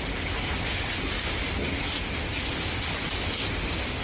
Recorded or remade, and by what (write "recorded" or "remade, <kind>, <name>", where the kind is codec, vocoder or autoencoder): recorded